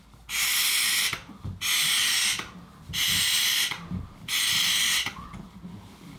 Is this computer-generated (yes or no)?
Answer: no